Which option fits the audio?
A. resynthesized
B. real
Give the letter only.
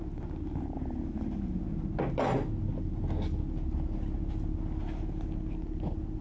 B